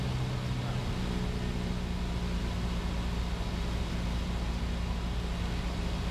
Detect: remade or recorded recorded